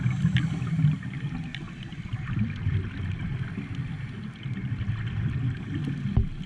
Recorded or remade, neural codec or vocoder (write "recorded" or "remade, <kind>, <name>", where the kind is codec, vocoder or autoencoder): recorded